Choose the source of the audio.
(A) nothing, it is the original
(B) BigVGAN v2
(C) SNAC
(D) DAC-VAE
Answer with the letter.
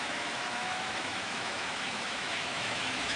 D